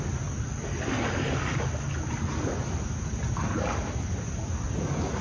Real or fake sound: real